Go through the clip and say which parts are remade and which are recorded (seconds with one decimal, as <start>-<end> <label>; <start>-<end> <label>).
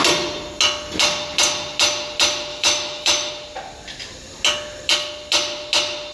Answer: 0.0-2.5 recorded; 2.5-3.3 remade; 3.3-6.1 recorded